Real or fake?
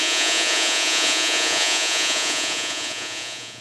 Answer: fake